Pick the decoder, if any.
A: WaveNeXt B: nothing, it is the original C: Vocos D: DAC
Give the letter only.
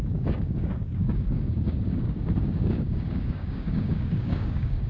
D